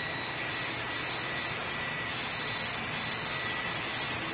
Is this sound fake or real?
real